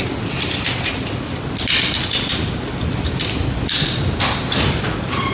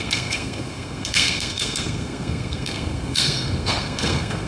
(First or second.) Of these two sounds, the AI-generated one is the second